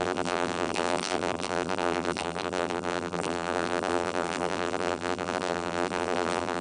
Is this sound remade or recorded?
remade